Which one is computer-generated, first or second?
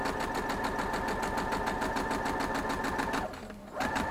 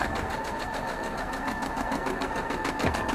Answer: second